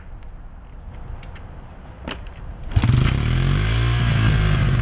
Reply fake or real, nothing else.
real